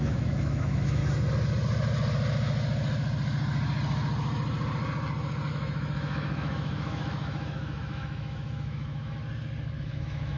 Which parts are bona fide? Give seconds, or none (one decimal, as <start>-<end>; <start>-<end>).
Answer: 1.0-5.5; 9.2-9.8